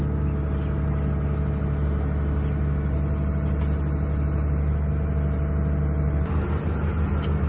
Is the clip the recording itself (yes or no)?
yes